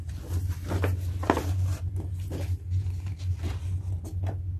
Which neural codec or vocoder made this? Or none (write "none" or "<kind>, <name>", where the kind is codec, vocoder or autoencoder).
none